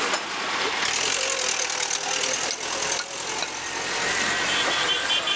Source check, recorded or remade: recorded